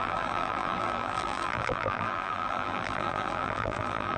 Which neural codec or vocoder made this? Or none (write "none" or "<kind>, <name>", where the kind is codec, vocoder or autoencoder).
vocoder, BigVGAN v2